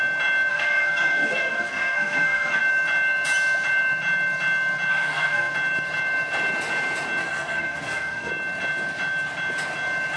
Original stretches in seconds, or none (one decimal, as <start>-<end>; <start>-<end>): 0.0-0.5; 2.6-4.9; 5.5-7.2; 8.3-10.2